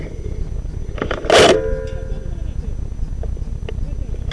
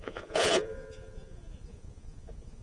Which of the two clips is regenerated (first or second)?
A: second